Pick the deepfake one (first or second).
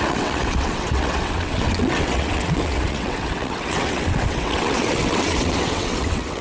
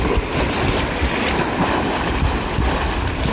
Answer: first